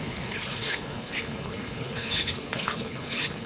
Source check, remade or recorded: remade